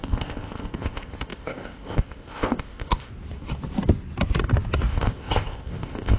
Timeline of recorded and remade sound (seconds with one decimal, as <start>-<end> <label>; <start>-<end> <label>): 0.0-3.1 remade; 3.1-4.9 recorded; 4.9-6.2 remade